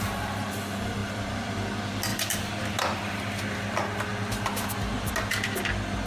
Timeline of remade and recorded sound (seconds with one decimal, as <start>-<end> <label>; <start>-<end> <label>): 0.0-1.0 recorded; 1.0-1.5 remade; 1.5-6.1 recorded